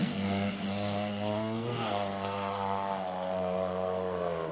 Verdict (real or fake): fake